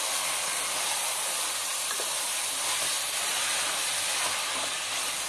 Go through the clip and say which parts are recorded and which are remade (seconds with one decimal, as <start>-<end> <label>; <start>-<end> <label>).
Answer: 0.0-5.3 recorded